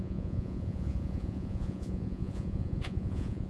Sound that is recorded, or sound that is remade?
remade